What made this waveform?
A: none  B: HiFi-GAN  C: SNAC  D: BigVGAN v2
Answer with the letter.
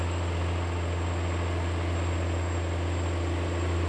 A